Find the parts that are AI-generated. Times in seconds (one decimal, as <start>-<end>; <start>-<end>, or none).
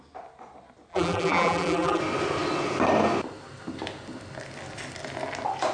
0.9-2.0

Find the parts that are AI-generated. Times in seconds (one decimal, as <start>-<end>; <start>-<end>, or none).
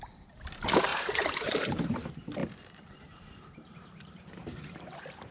0.9-1.8; 2.4-5.3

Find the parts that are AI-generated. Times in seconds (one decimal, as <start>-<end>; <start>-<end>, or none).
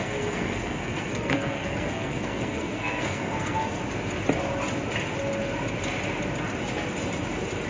0.0-3.8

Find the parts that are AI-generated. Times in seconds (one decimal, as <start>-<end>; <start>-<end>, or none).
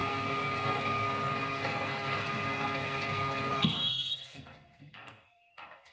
0.0-5.9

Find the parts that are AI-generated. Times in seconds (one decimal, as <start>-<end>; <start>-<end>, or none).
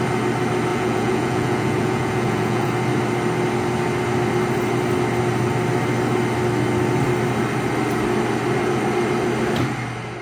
0.7-2.7